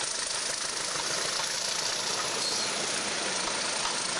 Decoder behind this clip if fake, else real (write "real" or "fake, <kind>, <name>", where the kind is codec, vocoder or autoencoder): real